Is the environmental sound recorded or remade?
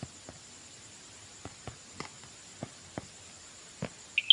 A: recorded